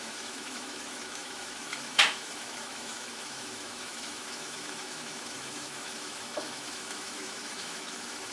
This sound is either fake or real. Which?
fake